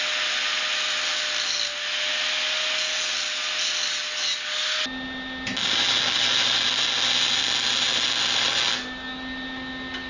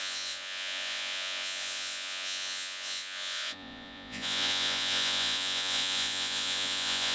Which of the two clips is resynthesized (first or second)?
second